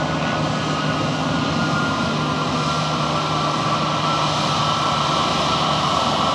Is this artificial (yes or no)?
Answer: no